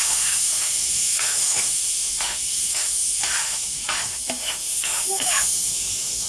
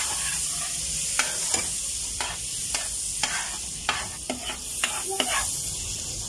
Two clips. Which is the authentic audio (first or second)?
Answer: second